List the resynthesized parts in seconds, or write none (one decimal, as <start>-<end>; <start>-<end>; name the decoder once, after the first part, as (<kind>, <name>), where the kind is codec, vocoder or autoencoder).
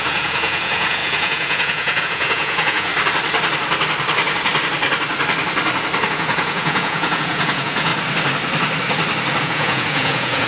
0.0-2.9 (vocoder, Vocos); 6.1-7.9; 9.4-10.5